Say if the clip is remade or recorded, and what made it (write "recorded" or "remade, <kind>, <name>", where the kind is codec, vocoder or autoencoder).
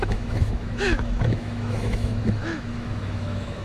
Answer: remade, autoencoder, DAC-VAE